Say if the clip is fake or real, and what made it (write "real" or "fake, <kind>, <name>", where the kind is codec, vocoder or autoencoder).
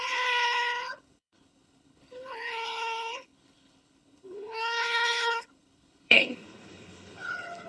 fake, codec, HILCodec